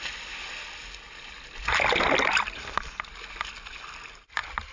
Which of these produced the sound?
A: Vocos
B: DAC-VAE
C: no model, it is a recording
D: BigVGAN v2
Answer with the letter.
C